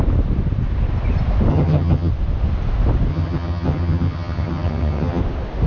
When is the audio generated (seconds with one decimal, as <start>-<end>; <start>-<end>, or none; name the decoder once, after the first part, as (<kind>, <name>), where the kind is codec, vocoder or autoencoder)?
1.5-2.1 (vocoder, HiFi-GAN); 3.1-5.2